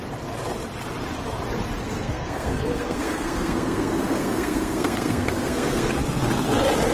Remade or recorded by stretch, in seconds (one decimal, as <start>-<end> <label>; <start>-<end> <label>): 0.0-1.8 recorded; 1.8-5.9 remade; 5.9-6.9 recorded